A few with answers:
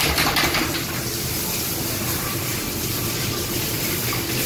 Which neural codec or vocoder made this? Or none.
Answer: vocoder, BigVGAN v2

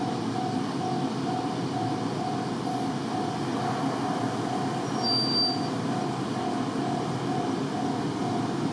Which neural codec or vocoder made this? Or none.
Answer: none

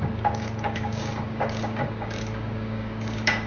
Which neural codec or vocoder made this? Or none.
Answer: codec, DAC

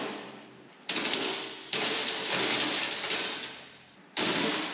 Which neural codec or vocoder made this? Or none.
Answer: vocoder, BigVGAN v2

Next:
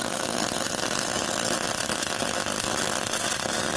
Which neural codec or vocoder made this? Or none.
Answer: none